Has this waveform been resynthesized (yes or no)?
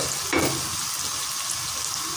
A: no